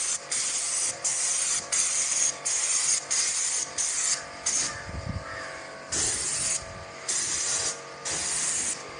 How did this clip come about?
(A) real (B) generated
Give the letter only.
A